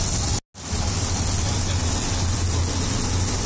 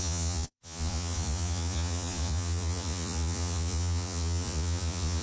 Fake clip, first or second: second